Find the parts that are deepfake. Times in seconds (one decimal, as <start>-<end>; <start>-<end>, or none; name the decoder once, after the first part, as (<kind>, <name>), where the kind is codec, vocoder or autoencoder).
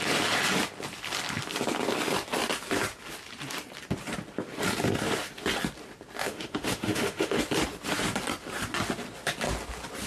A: 6.2-7.4 (autoencoder, DAC-VAE)